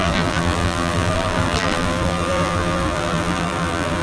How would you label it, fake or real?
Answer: fake